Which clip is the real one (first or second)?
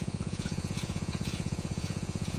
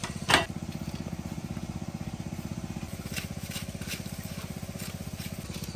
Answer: second